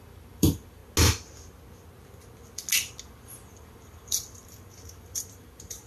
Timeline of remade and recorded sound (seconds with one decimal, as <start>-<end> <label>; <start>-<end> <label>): 0.0-0.8 remade; 0.8-3.0 recorded; 3.0-5.9 remade